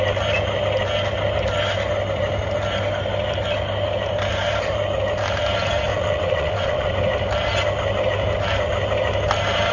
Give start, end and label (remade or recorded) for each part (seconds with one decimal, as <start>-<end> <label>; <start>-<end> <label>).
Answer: 0.0-5.9 recorded; 5.9-6.9 remade; 6.9-9.7 recorded